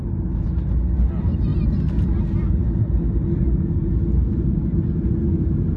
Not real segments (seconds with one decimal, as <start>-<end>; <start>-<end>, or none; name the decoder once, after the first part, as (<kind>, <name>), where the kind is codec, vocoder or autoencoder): none